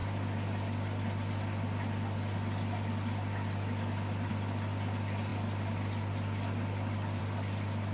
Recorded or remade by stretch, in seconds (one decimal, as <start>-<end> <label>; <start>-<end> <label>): 0.0-7.9 recorded